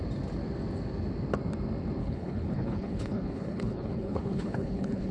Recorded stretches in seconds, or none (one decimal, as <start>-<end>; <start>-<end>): 0.0-2.0

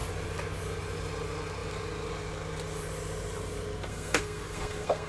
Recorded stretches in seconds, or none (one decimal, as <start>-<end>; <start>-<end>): 0.0-3.9

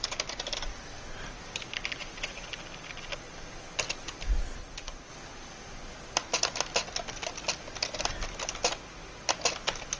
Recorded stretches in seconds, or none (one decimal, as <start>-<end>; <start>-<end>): 0.0-2.0; 2.5-4.6; 5.1-10.0